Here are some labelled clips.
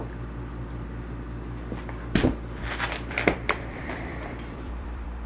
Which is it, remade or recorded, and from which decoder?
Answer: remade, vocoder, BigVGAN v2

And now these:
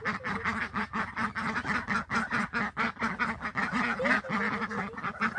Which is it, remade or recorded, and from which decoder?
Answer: recorded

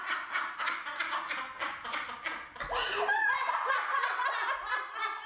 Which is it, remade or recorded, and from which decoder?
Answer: recorded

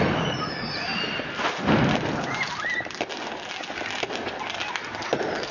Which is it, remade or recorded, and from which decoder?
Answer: recorded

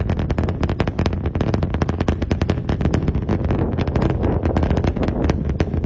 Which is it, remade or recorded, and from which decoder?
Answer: recorded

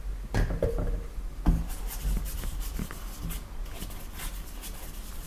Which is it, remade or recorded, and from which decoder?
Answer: recorded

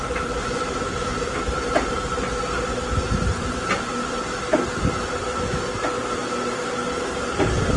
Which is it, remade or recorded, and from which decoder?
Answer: recorded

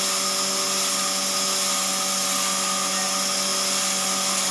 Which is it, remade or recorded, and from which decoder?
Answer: recorded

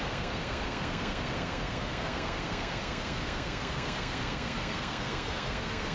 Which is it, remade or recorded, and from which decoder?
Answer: remade, codec, SNAC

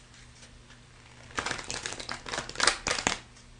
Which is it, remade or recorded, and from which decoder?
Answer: recorded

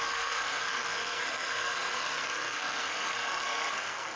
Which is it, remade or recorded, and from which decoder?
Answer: remade, codec, SNAC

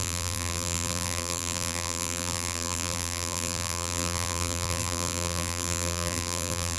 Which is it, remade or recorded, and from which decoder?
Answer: remade, vocoder, BigVGAN v2